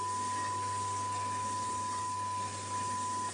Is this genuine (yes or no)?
yes